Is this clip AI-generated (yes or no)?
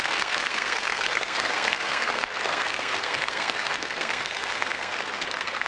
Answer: yes